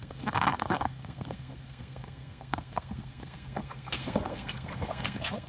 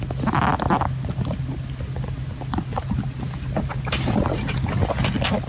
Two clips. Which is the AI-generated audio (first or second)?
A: first